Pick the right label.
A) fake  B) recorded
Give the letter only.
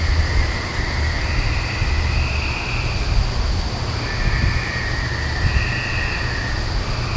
B